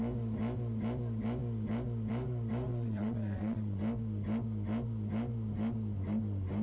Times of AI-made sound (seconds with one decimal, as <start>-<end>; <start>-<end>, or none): 2.7-3.8